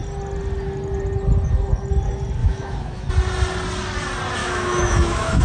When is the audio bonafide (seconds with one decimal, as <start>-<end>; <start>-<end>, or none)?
0.0-2.4; 3.1-4.4